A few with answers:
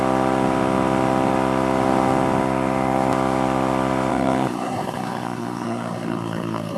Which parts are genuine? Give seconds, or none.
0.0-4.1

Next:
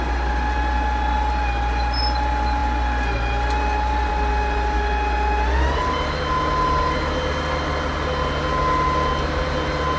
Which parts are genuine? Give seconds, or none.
0.0-10.0

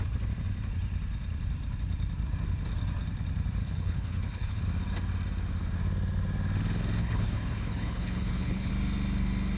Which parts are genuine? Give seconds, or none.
0.0-3.6; 4.6-7.0; 8.7-9.6

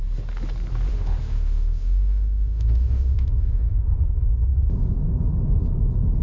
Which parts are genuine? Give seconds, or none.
0.0-0.9; 4.0-6.2

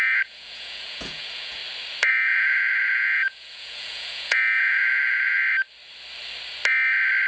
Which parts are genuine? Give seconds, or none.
1.6-2.1; 5.4-7.3

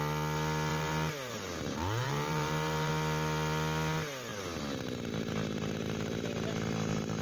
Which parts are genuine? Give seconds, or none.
0.0-0.7; 2.9-7.2

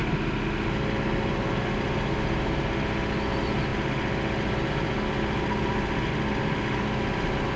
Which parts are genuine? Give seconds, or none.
0.0-7.6

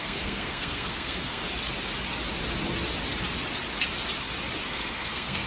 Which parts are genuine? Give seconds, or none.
1.4-4.7